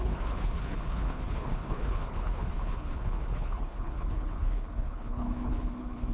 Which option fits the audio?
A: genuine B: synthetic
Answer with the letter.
B